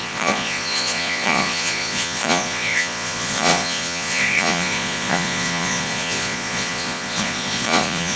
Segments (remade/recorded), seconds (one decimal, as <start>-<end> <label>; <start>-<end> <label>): 0.0-8.2 remade